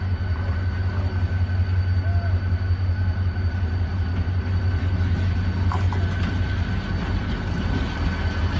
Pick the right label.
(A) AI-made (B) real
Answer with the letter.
B